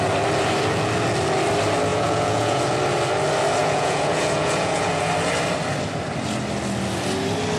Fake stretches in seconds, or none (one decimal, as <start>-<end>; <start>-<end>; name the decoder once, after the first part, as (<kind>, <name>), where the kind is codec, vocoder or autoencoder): 1.9-2.6 (vocoder, Vocos); 3.6-5.1